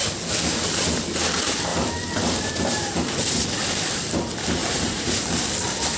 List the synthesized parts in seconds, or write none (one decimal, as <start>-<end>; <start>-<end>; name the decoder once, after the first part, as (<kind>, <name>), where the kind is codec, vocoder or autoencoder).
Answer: 4.6-5.2 (vocoder, Vocos)